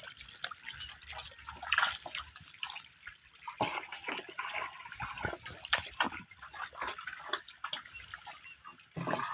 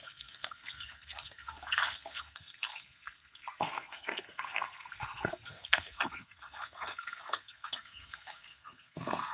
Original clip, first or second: first